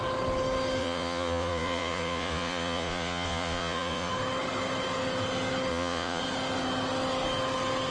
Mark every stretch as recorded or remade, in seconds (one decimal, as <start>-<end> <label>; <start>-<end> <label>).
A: 0.0-0.8 recorded; 0.8-4.1 remade; 4.1-5.7 recorded; 5.7-6.2 remade; 6.2-7.9 recorded